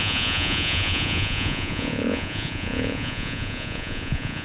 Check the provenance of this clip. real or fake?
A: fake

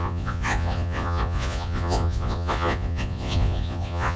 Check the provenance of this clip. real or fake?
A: fake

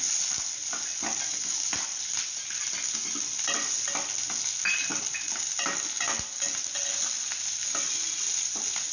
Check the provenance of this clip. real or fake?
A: real